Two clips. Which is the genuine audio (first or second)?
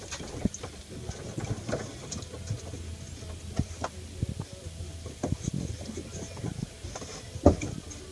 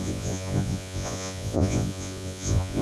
first